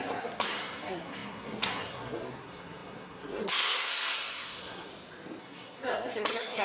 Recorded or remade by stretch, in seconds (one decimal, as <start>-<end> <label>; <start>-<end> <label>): 0.0-4.9 remade; 4.9-5.4 recorded; 5.4-6.6 remade